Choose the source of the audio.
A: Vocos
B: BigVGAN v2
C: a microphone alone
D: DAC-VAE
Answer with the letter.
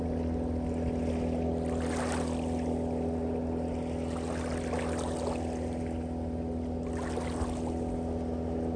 C